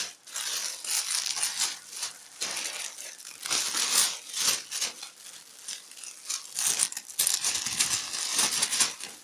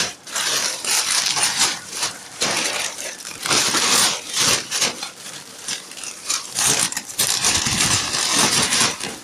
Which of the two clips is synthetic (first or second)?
second